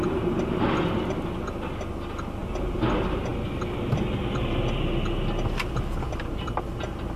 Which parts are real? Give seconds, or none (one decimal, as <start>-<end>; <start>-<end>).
0.0-7.2